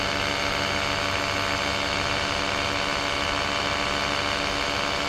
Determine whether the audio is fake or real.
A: real